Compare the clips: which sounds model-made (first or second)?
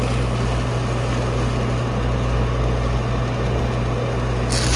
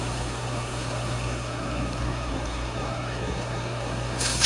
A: second